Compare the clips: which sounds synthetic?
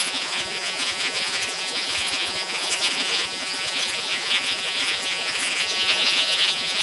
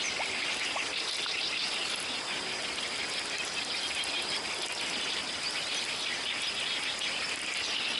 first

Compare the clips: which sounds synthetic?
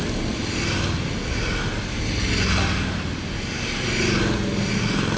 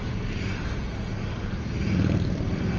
second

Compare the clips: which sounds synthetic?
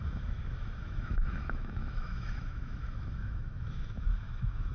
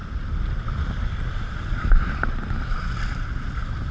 first